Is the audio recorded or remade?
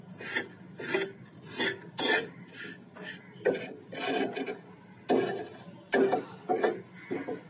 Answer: recorded